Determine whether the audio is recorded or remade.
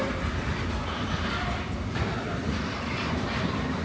remade